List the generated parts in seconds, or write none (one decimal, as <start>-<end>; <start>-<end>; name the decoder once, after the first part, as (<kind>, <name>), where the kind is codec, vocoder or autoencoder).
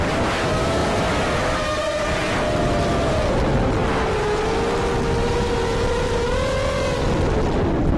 0.8-2.2 (vocoder, BigVGAN v2)